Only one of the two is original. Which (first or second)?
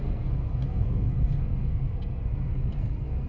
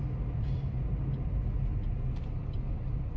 second